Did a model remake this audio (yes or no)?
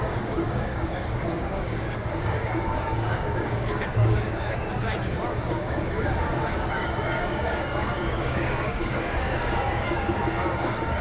yes